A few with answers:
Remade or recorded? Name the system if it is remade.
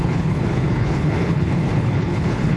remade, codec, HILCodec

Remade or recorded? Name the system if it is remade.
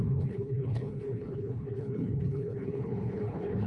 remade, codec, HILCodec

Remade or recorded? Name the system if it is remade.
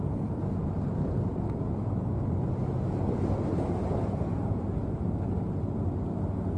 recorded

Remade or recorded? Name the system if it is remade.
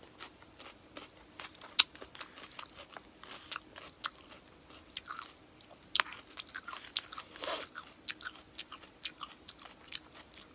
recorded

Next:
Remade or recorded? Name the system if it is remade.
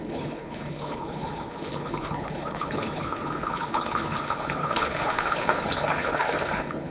remade, codec, HILCodec